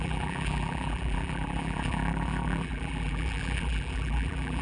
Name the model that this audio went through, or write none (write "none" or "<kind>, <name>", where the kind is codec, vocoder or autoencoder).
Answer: vocoder, BigVGAN v2